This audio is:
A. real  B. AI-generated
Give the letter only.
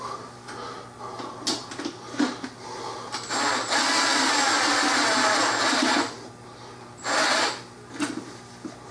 A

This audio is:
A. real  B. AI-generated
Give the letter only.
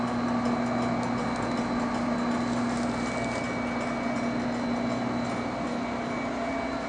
A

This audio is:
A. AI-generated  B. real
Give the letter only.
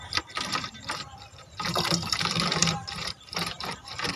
A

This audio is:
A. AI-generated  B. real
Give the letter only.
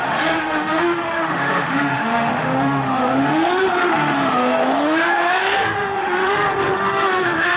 A